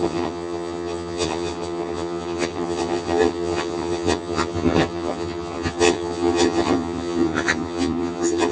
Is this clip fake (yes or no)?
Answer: yes